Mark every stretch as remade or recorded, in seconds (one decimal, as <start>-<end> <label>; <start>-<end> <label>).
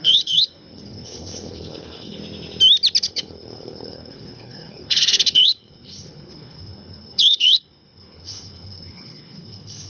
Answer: 0.0-2.2 remade; 2.2-3.0 recorded; 3.0-9.9 remade